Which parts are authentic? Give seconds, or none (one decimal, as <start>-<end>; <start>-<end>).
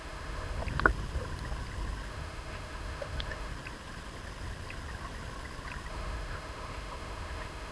0.6-2.1; 3.5-5.9